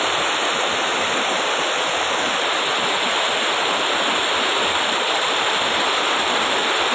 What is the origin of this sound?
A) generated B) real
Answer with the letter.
B